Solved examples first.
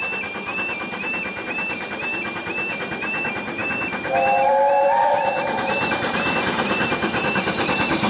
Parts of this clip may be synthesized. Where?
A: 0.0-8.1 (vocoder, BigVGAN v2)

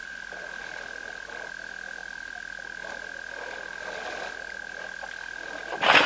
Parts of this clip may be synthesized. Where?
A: 0.0-0.6 (vocoder, BigVGAN v2)

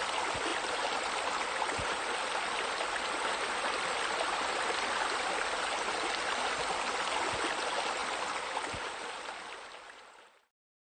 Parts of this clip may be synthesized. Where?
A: 0.5-5.0 (vocoder, BigVGAN v2); 8.0-9.2

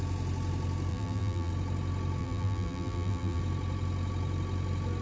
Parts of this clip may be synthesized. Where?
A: 0.9-1.5 (vocoder, BigVGAN v2); 2.2-3.4

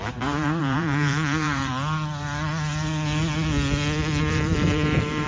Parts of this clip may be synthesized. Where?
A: 0.0-1.7 (vocoder, BigVGAN v2); 4.2-5.3

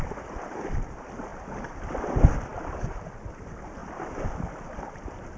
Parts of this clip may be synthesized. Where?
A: 1.3-2.0 (vocoder, BigVGAN v2); 3.8-5.4

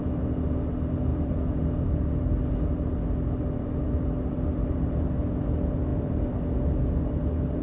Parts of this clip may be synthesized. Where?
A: 1.1-1.9 (vocoder, BigVGAN v2); 5.9-6.4